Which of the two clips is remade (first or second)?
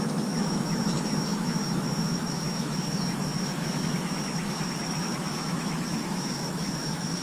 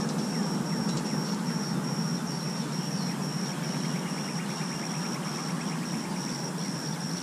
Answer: first